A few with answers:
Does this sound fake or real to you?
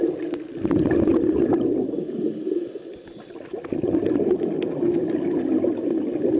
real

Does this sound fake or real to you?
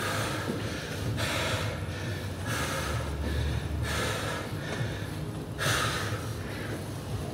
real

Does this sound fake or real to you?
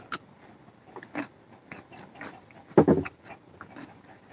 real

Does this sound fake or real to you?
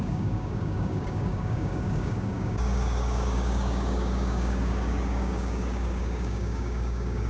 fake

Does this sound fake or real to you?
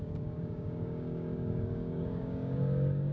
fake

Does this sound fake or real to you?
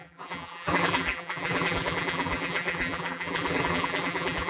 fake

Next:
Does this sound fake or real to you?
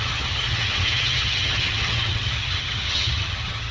fake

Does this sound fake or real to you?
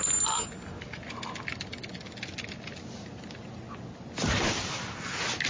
real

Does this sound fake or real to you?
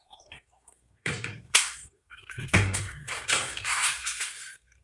fake